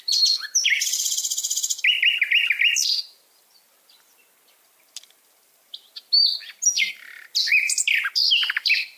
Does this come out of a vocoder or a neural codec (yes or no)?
no